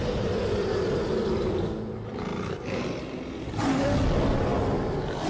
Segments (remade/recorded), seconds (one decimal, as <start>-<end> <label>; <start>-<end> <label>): 0.0-5.3 recorded